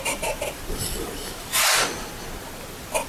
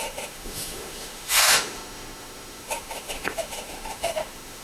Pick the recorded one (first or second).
first